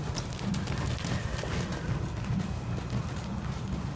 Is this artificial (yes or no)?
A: no